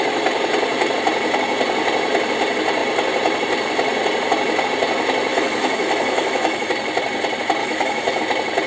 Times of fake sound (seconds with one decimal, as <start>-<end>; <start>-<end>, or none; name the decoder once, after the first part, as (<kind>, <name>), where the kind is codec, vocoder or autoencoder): 5.3-6.7 (autoencoder, DAC-VAE); 7.6-8.2